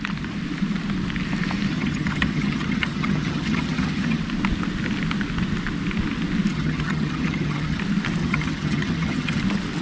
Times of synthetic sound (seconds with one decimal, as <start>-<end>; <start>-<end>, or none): 1.7-4.2; 6.5-7.8; 8.2-9.4